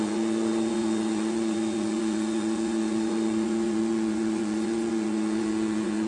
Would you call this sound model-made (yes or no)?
yes